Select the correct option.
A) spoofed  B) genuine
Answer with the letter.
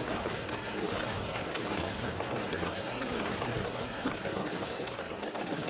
A